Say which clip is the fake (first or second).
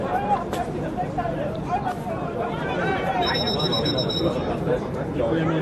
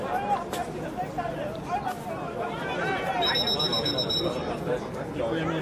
first